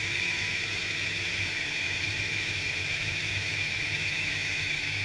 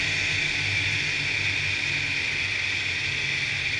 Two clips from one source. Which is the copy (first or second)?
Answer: first